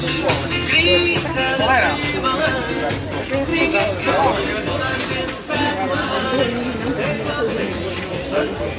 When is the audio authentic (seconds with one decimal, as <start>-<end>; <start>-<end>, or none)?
0.0-7.4; 8.2-8.8